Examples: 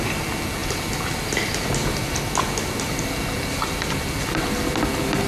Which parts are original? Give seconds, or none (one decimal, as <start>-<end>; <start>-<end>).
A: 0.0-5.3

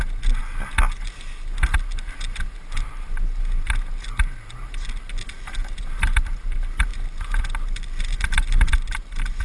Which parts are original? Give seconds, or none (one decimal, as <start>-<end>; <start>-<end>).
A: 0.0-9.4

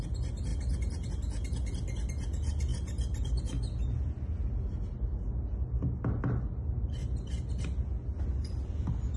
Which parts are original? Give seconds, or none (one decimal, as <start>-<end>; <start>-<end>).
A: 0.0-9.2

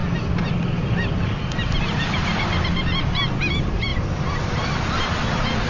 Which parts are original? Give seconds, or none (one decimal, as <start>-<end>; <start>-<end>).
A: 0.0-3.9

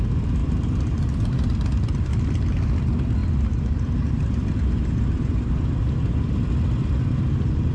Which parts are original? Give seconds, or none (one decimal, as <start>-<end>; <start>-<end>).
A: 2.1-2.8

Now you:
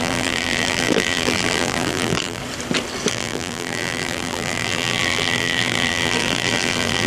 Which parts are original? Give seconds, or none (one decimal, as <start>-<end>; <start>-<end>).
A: 2.4-3.1

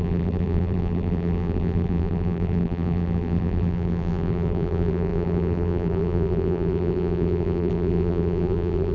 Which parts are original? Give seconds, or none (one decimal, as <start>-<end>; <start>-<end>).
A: none

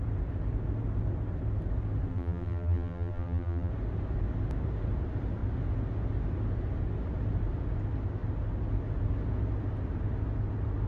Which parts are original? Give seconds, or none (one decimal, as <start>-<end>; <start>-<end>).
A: 0.0-2.1; 3.7-10.9